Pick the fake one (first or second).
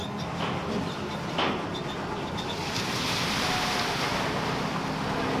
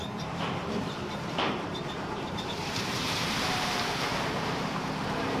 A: second